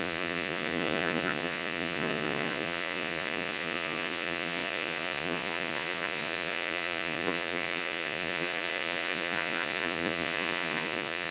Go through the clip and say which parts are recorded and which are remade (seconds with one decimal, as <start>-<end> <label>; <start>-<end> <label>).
0.0-11.3 remade